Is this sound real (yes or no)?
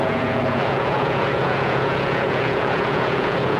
no